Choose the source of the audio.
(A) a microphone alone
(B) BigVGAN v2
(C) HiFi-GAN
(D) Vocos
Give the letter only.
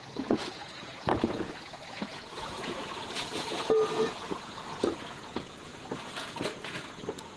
D